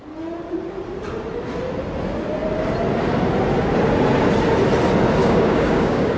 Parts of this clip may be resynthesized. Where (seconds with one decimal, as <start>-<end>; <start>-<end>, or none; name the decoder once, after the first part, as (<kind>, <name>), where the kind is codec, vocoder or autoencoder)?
5.2-6.2 (codec, DAC)